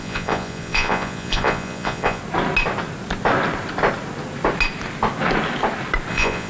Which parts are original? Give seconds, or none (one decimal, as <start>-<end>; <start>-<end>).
2.2-6.1

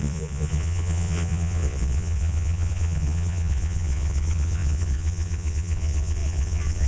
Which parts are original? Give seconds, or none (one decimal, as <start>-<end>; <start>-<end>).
none

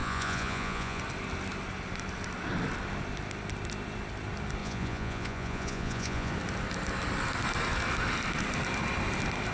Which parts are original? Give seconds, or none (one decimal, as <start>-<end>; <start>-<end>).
1.0-4.6; 6.3-9.5

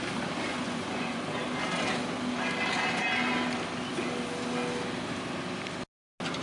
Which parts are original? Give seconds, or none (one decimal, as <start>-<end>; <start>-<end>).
0.0-0.5; 1.2-6.4

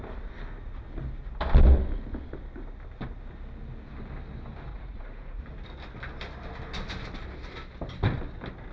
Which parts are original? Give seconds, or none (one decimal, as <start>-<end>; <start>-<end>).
0.0-4.7; 5.4-8.7

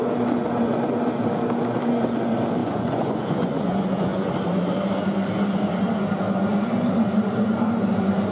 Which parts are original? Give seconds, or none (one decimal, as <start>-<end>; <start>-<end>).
0.0-2.6; 4.3-8.3